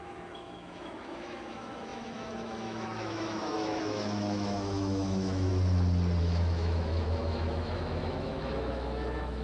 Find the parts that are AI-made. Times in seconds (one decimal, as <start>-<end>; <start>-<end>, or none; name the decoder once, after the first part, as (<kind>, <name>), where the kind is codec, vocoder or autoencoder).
0.0-5.5 (autoencoder, DAC-VAE); 6.2-9.4